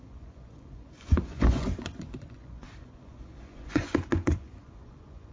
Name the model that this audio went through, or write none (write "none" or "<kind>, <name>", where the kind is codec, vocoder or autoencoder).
vocoder, Vocos